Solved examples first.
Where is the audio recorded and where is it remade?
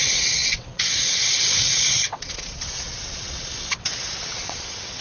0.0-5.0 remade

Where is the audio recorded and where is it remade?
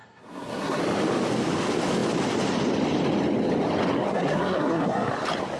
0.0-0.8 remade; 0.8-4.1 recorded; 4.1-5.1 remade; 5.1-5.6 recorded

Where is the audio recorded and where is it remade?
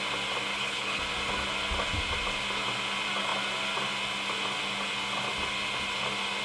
0.0-0.5 recorded; 0.5-1.0 remade; 1.0-6.4 recorded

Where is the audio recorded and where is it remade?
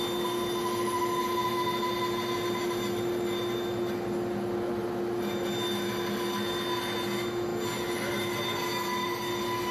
0.0-9.7 recorded